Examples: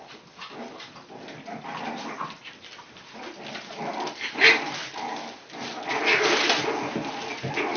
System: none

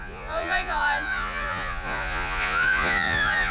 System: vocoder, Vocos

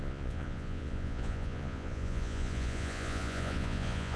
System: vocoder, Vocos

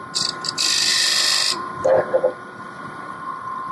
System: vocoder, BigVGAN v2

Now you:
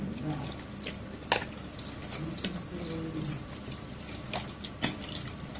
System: none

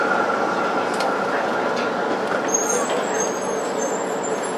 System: none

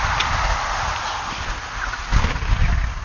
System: none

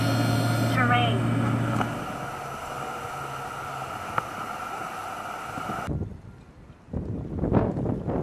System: none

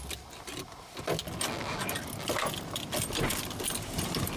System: vocoder, BigVGAN v2